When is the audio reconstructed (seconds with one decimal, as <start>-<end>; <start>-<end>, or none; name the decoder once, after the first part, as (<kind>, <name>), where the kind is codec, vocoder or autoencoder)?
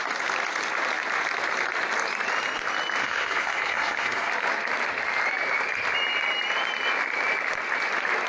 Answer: 3.0-4.3 (codec, SNAC)